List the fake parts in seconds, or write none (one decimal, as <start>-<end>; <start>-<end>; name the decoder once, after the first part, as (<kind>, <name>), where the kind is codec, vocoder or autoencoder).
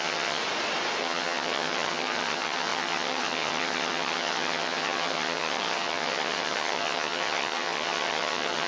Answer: 0.0-0.4 (vocoder, HiFi-GAN); 1.0-8.7